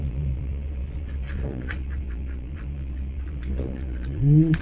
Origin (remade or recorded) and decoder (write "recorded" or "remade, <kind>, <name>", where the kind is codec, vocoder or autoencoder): remade, vocoder, Vocos